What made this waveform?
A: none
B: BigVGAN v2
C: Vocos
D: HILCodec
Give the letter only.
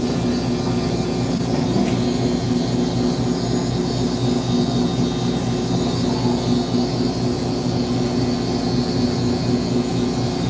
A